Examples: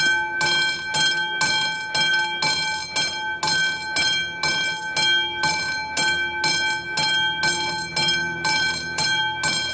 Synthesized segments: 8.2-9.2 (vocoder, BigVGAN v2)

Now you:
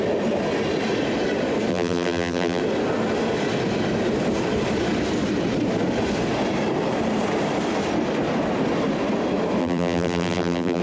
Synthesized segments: 1.7-2.6 (vocoder, BigVGAN v2); 9.6-10.8

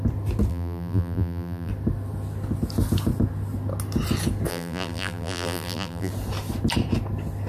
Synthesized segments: 0.5-1.7 (vocoder, BigVGAN v2); 4.5-6.1

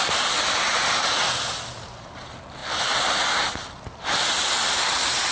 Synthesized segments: none

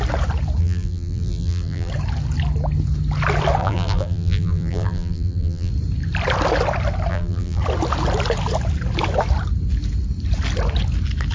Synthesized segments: 0.6-1.9 (vocoder, BigVGAN v2); 3.6-5.7; 7.1-7.6

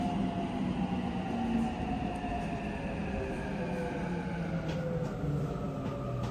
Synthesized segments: 3.0-3.7 (vocoder, BigVGAN v2)

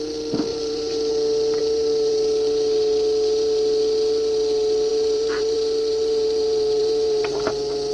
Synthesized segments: 0.5-1.1 (vocoder, BigVGAN v2); 1.6-2.1; 4.9-7.5

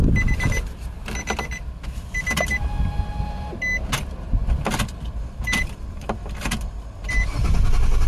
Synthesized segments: 4.4-7.4 (vocoder, BigVGAN v2)